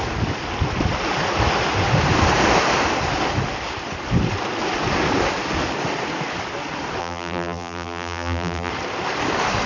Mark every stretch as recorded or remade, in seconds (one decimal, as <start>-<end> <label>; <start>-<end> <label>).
0.0-7.0 recorded; 7.0-8.7 remade; 8.7-9.7 recorded